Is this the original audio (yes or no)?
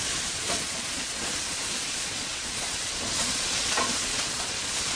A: no